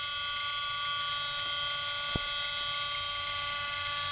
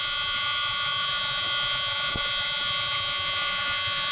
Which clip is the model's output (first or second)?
second